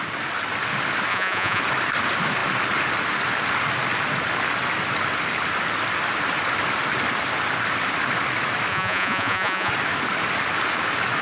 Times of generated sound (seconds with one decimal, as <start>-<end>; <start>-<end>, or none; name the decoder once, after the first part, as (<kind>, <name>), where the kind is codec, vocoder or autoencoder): 1.1-1.6 (vocoder, Vocos); 8.7-9.7